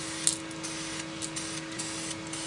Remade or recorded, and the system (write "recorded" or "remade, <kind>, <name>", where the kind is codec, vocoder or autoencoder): recorded